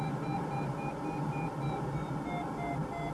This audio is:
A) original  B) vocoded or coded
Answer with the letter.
A